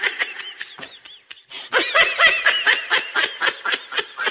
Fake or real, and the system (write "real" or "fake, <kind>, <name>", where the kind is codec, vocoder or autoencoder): real